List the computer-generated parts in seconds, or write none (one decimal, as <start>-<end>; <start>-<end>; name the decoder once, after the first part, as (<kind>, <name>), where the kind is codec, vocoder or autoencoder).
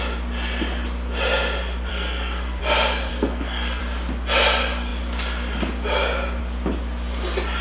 1.9-2.6 (codec, SNAC); 3.1-3.8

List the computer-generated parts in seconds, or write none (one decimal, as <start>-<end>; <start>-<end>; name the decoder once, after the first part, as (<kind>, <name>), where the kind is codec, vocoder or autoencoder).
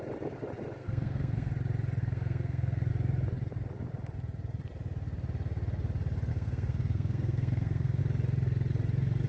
0.8-1.5 (codec, SNAC); 2.0-2.9; 6.3-8.0